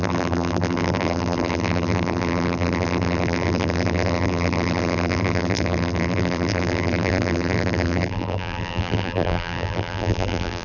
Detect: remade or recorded remade